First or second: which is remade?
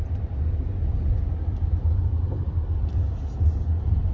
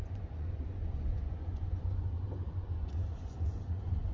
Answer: second